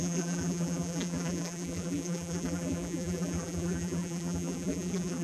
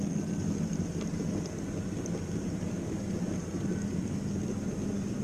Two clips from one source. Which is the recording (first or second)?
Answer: second